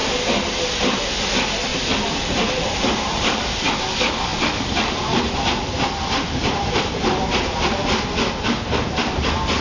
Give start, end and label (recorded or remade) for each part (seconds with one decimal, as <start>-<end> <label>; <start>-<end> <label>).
0.0-1.7 recorded; 1.7-3.7 remade; 3.7-4.3 recorded; 4.3-6.9 remade; 6.9-9.6 recorded